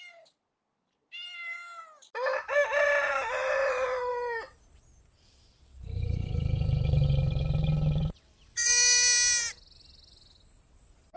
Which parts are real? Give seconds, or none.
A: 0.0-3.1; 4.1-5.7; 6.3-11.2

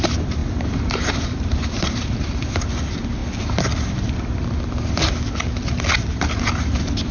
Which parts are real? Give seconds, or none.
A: 0.0-0.4; 2.7-7.1

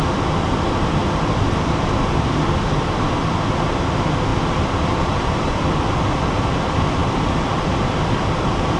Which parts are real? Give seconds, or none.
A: 0.0-4.3; 5.9-7.0